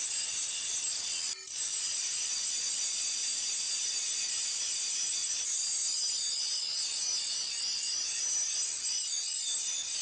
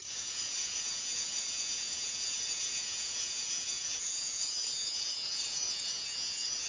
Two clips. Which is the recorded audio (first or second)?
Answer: first